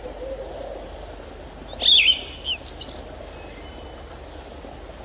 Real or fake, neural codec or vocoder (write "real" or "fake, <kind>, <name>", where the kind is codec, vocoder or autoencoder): real